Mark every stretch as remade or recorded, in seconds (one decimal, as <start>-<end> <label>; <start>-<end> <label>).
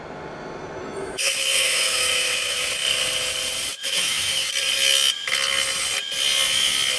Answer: 0.0-0.8 recorded; 0.8-2.7 remade; 2.7-3.7 recorded; 3.7-4.5 remade; 4.5-7.0 recorded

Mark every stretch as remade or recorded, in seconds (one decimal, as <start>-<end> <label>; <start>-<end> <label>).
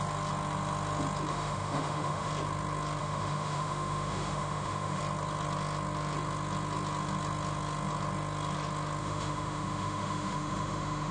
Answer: 0.0-1.3 recorded; 1.3-2.3 remade; 2.3-3.0 recorded; 3.0-5.0 remade; 5.0-9.0 recorded; 9.0-11.1 remade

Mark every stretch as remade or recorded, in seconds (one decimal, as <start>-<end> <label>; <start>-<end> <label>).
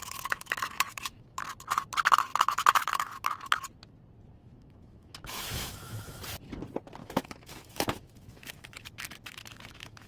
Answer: 0.0-1.4 remade; 1.4-2.3 recorded; 2.3-3.6 remade; 3.6-4.4 recorded; 4.4-6.2 remade; 6.2-7.0 recorded; 7.0-10.1 remade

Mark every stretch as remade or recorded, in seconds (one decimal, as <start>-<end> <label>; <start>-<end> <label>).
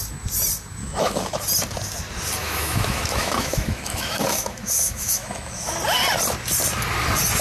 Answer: 0.0-0.8 recorded; 0.8-1.4 remade; 1.4-2.4 recorded; 2.4-5.7 remade; 5.7-7.4 recorded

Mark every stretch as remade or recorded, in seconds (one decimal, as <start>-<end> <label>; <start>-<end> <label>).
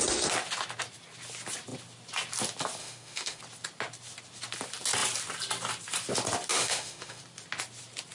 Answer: 0.0-2.8 recorded; 2.8-3.4 remade; 3.4-6.5 recorded; 6.5-7.2 remade; 7.2-8.1 recorded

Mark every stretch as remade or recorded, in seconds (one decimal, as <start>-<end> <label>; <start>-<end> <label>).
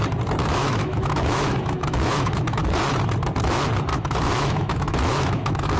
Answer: 0.0-0.4 recorded; 0.4-2.6 remade; 2.6-3.9 recorded; 3.9-5.8 remade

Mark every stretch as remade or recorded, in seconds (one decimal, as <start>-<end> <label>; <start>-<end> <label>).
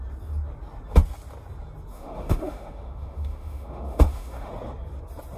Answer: 0.0-1.9 recorded; 1.9-4.5 remade; 4.5-5.4 recorded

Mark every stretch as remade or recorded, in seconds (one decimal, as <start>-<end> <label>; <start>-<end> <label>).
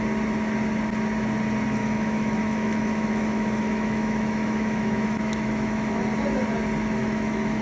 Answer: 0.0-1.8 recorded; 1.8-6.0 remade; 6.0-7.0 recorded; 7.0-7.6 remade